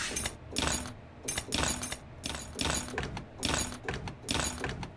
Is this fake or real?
real